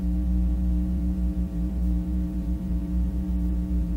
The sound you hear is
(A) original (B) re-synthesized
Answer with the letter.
B